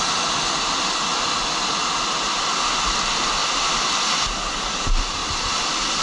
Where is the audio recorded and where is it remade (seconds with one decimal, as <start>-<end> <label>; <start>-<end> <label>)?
0.0-6.0 recorded